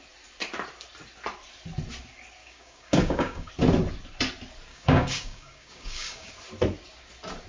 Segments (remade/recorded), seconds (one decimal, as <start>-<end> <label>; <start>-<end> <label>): 0.0-2.4 recorded; 2.4-3.5 remade; 3.5-4.7 recorded; 4.7-6.3 remade; 6.3-7.5 recorded